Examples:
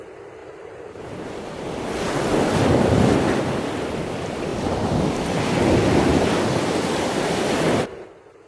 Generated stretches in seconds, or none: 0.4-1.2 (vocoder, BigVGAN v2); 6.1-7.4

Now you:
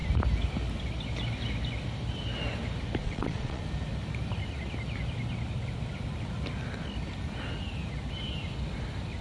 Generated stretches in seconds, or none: 3.0-3.6 (vocoder, Vocos)

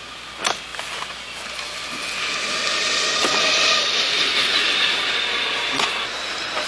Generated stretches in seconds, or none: 3.2-4.3 (vocoder, BigVGAN v2)

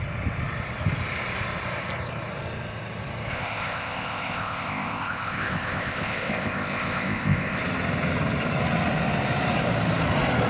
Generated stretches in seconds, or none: 3.3-7.6 (codec, ZipCodec)

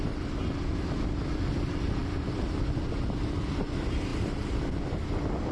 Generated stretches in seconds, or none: none

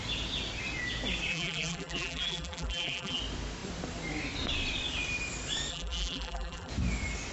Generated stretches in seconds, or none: 1.3-3.2 (vocoder, BigVGAN v2); 5.7-6.7

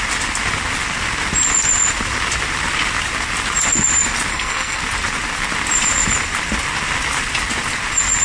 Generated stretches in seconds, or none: 4.3-4.8 (codec, SNAC)